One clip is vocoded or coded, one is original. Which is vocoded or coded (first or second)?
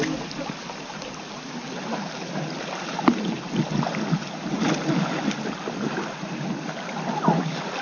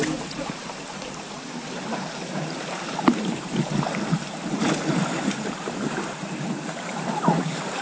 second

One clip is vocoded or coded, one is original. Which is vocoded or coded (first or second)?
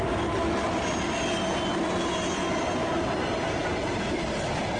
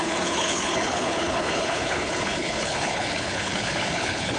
second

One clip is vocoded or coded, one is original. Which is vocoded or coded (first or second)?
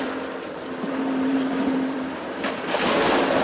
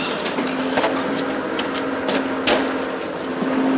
first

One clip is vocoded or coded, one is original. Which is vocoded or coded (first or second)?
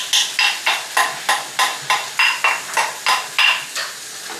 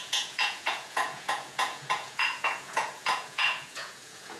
second